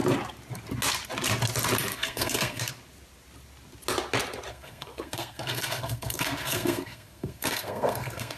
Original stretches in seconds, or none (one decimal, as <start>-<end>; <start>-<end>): 0.0-1.9; 2.7-4.5